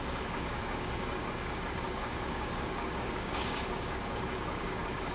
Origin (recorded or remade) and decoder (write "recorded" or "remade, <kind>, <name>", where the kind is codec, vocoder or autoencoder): remade, codec, DAC